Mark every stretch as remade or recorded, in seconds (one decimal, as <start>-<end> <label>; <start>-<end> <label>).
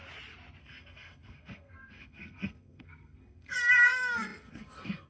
0.0-0.6 recorded; 0.6-5.1 remade